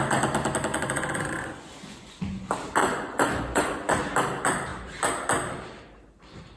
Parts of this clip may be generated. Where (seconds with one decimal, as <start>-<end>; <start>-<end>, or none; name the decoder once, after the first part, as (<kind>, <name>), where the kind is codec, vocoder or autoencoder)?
0.7-2.3 (vocoder, Vocos); 2.8-4.0